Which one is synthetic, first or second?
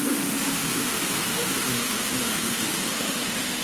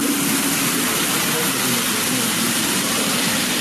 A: first